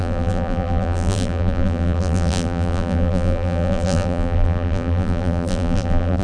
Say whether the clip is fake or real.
fake